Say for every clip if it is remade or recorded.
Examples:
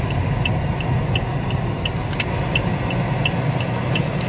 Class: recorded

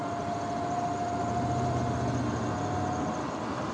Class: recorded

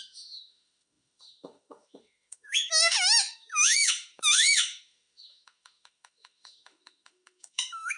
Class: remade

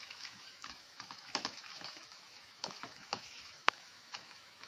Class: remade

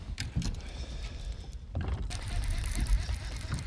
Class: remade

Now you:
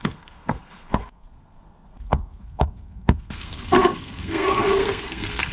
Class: remade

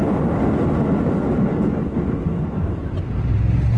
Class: recorded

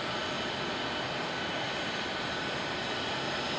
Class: recorded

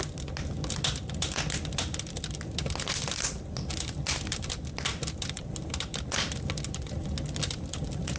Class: recorded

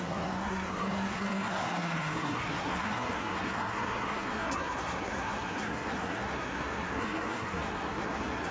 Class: remade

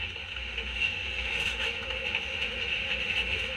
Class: remade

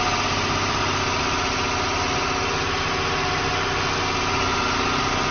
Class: recorded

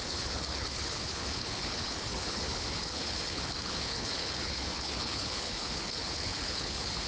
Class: remade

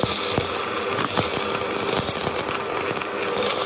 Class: recorded